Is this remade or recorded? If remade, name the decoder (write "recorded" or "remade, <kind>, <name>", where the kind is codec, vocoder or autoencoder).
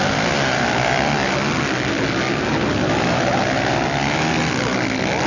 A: recorded